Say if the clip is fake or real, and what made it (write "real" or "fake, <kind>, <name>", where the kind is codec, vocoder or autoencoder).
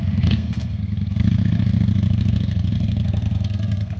fake, codec, SNAC